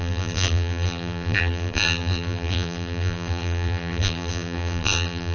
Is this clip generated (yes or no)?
yes